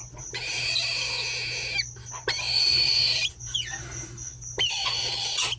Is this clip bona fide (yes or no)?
yes